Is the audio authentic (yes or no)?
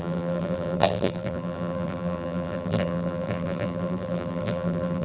no